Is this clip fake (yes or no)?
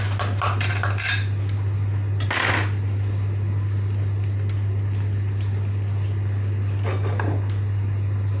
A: no